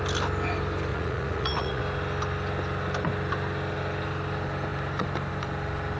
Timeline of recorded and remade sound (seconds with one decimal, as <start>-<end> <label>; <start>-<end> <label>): 0.0-0.9 recorded; 0.9-1.8 remade; 1.8-6.0 recorded